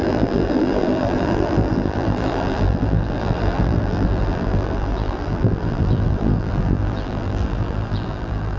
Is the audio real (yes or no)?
no